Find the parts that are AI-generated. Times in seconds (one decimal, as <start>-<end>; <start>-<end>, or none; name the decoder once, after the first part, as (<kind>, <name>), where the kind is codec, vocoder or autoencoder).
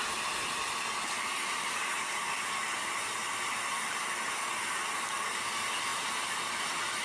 0.0-3.2 (vocoder, BigVGAN v2); 3.9-5.9; 6.5-7.0